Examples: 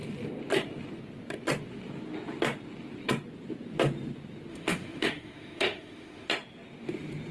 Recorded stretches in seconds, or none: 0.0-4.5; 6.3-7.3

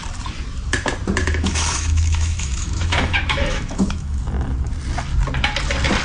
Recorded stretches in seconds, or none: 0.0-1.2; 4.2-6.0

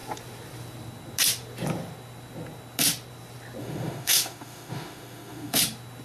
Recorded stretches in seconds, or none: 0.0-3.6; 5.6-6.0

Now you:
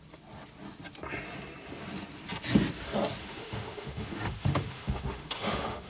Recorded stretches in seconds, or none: 0.0-3.2

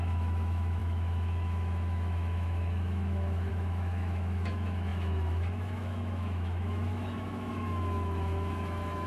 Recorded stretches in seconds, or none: none

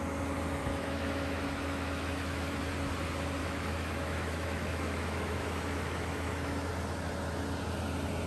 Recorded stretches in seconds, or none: 0.0-0.6; 2.6-3.4; 6.7-8.3